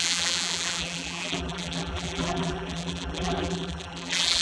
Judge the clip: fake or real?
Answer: fake